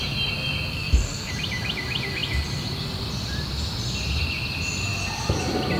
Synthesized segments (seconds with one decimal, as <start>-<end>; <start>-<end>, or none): 0.7-1.3